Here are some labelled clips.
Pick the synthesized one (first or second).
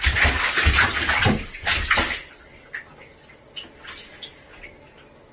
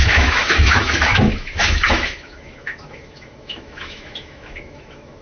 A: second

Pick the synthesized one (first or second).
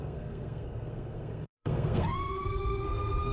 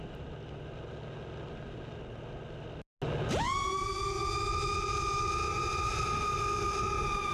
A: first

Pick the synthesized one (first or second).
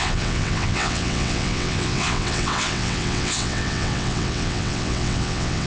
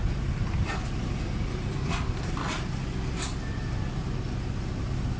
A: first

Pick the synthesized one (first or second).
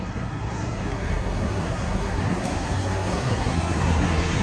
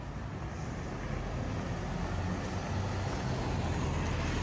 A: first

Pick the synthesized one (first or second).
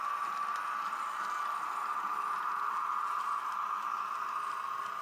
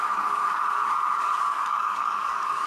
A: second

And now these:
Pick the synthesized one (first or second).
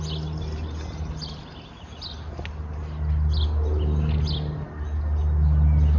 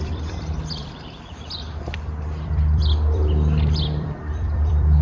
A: second